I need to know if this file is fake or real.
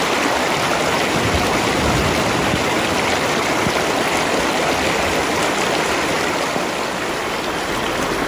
real